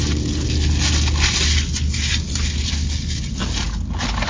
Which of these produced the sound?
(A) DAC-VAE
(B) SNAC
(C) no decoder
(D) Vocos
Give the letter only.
C